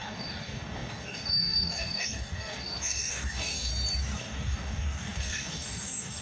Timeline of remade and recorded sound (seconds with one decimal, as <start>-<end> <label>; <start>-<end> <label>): 0.0-3.7 remade; 3.7-4.2 recorded; 4.2-6.2 remade